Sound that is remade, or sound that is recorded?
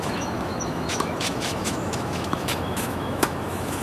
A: remade